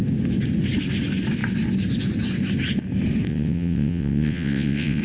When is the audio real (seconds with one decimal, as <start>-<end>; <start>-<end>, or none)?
0.0-3.3